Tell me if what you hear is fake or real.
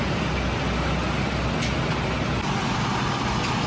real